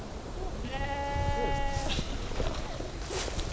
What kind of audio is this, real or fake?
real